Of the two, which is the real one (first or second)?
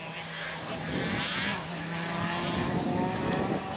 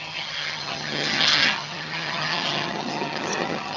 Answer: first